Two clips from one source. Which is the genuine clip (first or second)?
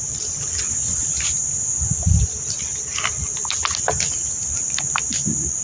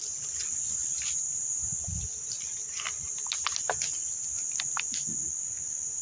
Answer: second